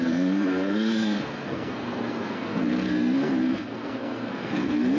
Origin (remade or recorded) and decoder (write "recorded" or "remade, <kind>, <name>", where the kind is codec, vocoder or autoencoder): remade, codec, SNAC